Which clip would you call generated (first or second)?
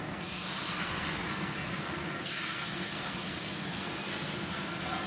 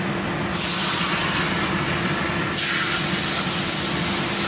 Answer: first